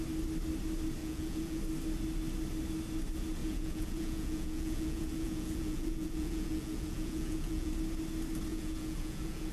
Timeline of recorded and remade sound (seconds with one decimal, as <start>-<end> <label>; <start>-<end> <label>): 0.0-1.0 recorded; 1.0-1.6 remade; 1.6-3.4 recorded; 3.4-7.7 remade; 7.7-8.5 recorded; 8.5-9.5 remade